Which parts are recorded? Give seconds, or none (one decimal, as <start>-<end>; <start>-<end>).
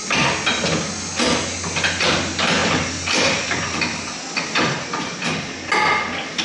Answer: 0.0-6.4